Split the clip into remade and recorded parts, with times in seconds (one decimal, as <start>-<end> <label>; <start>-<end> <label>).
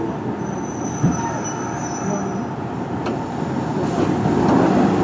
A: 0.0-5.0 recorded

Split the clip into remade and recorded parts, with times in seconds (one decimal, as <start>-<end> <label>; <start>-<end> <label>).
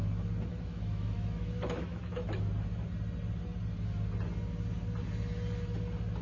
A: 0.0-0.5 recorded; 0.5-2.4 remade; 2.4-6.2 recorded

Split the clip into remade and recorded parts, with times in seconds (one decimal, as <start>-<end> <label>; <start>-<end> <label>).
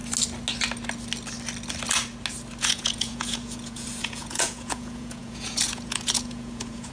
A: 0.0-2.6 recorded; 2.6-6.9 remade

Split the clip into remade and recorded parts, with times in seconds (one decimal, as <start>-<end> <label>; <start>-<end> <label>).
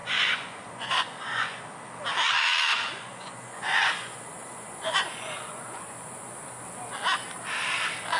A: 0.0-1.6 remade; 1.6-2.7 recorded; 2.7-6.6 remade; 6.6-8.2 recorded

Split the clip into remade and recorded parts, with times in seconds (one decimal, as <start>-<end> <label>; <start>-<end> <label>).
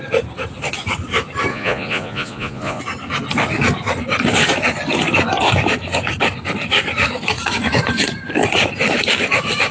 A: 0.0-1.5 recorded; 1.5-2.8 remade; 2.8-9.7 recorded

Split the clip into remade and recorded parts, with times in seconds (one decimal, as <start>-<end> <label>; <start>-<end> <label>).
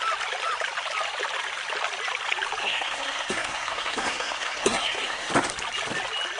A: 0.0-2.6 recorded; 2.6-5.3 remade; 5.3-6.4 recorded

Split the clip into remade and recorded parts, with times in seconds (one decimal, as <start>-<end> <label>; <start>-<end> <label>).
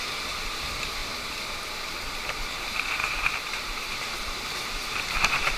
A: 0.0-1.0 remade; 1.0-2.4 recorded; 2.4-5.6 remade